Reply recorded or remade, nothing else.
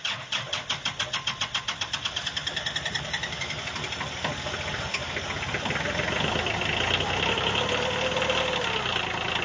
recorded